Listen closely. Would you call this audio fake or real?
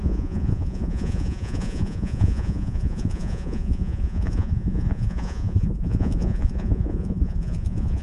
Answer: fake